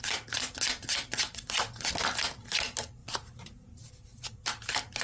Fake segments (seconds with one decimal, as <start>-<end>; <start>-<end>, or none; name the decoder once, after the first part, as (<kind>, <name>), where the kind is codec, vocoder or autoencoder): 3.0-3.9 (vocoder, BigVGAN v2)